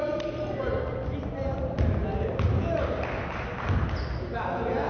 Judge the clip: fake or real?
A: real